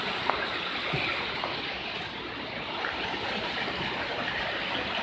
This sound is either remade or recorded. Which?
recorded